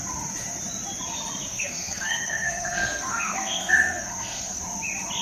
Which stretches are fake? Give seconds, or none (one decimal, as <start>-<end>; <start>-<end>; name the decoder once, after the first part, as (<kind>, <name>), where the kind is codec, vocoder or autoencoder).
1.5-4.6 (codec, SNAC)

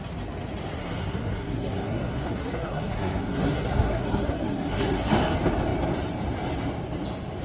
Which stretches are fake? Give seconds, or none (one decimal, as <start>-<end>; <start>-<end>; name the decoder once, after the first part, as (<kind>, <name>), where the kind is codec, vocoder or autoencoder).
0.8-5.2 (codec, SNAC)

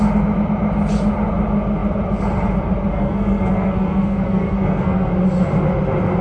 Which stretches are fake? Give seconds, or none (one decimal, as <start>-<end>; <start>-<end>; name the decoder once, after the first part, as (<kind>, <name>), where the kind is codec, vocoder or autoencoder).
2.9-5.1 (codec, SNAC)

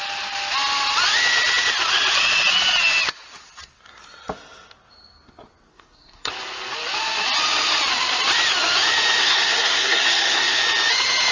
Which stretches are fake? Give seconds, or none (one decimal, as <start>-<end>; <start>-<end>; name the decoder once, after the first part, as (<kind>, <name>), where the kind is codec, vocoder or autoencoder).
5.7-6.3 (codec, SNAC); 9.2-10.6

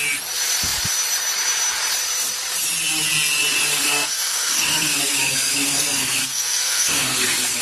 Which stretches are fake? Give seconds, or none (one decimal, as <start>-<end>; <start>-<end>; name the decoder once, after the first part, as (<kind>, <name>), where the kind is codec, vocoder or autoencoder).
3.7-7.6 (codec, SNAC)

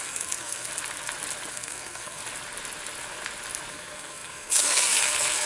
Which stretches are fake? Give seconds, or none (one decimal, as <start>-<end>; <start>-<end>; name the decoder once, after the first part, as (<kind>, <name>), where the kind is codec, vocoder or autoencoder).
0.0-0.7 (codec, SNAC); 1.5-2.2; 3.7-5.5

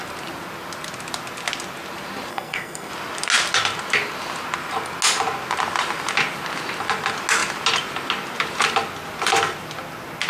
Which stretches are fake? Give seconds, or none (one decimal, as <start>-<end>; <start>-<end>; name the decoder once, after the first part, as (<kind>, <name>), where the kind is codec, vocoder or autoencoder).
2.3-2.9 (codec, SNAC)